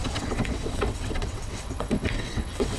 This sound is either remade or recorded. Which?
remade